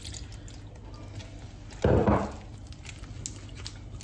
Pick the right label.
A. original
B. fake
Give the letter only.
A